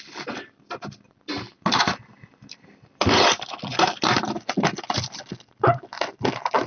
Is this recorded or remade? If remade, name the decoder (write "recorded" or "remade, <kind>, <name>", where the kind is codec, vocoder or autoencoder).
recorded